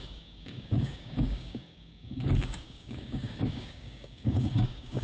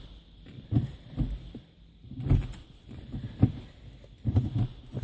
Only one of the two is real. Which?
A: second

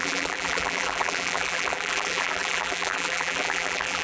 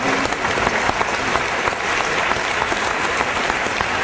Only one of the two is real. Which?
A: second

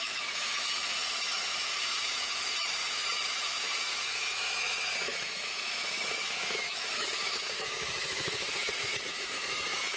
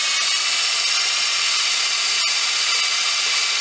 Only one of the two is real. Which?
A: second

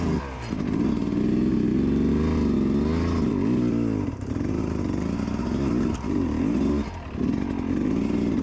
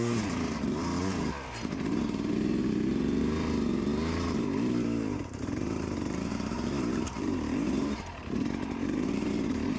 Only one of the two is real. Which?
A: first